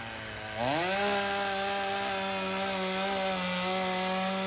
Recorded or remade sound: recorded